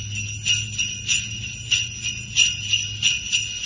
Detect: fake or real real